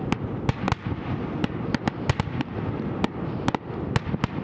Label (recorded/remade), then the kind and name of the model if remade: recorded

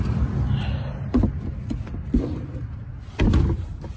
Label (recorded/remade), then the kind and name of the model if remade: recorded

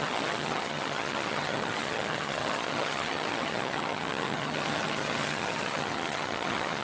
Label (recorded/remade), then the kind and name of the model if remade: remade, vocoder, HiFi-GAN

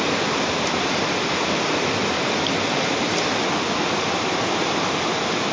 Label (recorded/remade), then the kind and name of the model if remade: recorded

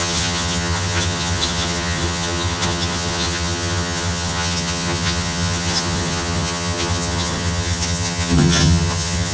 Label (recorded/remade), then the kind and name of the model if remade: remade, vocoder, HiFi-GAN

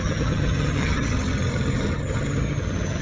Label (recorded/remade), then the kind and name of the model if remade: remade, vocoder, HiFi-GAN